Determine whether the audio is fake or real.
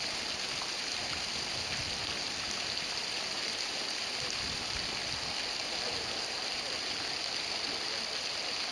real